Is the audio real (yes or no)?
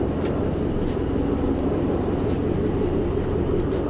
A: no